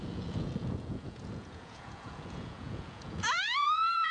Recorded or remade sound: remade